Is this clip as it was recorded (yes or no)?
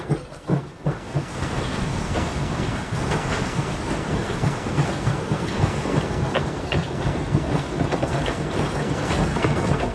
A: no